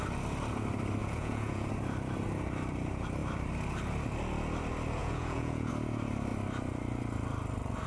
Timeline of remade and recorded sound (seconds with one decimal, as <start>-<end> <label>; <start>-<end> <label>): 0.0-1.0 recorded; 1.0-1.7 remade; 1.7-5.0 recorded; 5.0-5.7 remade; 5.7-7.9 recorded